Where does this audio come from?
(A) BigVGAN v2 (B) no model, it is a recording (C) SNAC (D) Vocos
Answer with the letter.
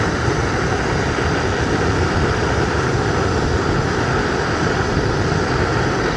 B